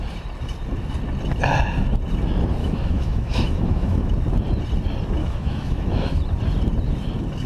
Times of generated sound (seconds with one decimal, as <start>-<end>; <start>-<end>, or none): 2.6-4.1; 5.2-6.2